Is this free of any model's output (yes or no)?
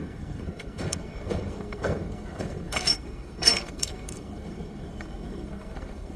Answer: no